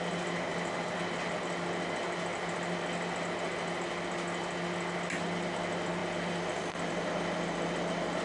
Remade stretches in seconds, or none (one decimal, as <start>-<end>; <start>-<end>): none